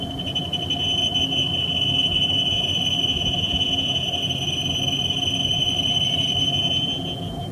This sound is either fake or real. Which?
real